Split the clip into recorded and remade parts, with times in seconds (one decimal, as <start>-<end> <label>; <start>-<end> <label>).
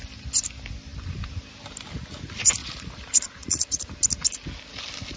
0.0-2.6 recorded; 2.6-3.9 remade; 3.9-5.2 recorded